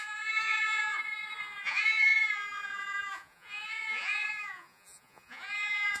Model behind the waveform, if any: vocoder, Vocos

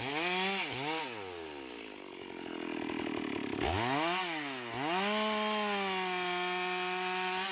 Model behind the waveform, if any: none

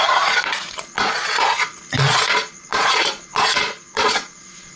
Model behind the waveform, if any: vocoder, Vocos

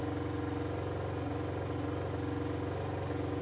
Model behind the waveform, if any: none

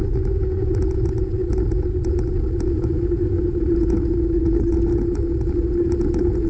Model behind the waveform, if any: vocoder, Vocos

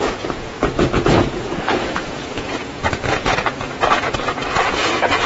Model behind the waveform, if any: vocoder, Vocos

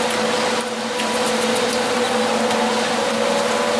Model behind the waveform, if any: none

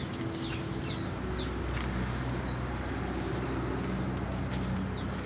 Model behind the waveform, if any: none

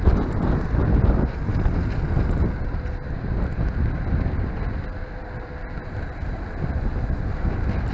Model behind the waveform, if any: none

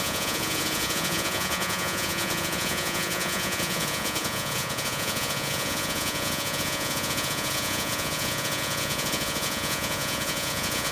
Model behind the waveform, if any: vocoder, Vocos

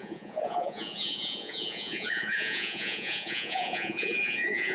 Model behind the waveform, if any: vocoder, Vocos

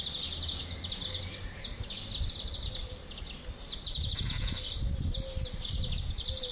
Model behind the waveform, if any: none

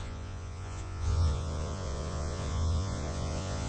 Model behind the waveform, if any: vocoder, Vocos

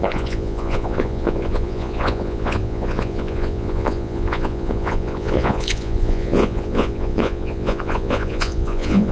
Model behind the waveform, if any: vocoder, Vocos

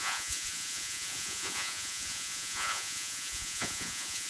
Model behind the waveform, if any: vocoder, Vocos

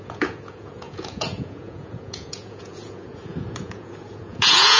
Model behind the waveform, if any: vocoder, Vocos